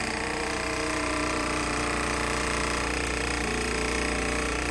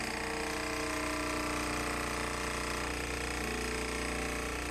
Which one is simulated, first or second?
first